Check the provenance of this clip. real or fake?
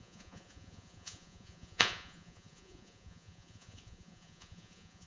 fake